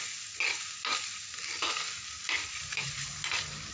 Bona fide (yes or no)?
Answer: yes